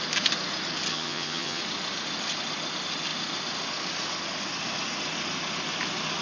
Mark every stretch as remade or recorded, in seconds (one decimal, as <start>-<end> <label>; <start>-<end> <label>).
0.0-0.9 recorded; 0.9-1.6 remade; 1.6-6.2 recorded